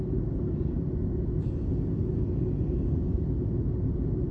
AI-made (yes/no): no